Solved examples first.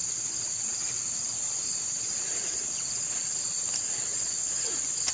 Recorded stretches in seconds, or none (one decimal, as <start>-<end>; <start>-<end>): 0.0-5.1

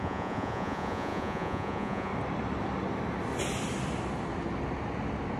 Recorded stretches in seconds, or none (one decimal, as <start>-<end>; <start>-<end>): 2.1-5.4

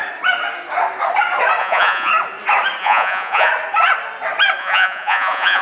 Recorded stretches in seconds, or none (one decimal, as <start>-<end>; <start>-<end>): 0.0-1.6; 2.1-2.8; 3.5-4.6